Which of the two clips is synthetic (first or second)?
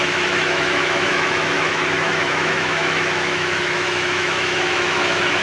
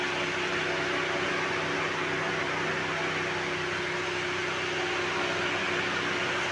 first